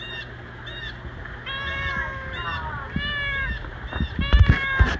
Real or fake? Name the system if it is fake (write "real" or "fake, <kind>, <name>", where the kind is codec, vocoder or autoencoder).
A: real